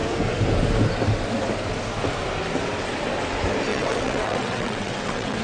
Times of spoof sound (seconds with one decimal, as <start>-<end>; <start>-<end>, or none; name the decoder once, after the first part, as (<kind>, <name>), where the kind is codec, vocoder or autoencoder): 3.7-5.4 (vocoder, WaveNeXt)